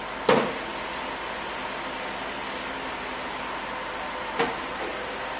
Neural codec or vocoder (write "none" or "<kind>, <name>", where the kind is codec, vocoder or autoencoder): none